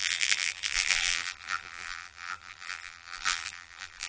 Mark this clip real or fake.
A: fake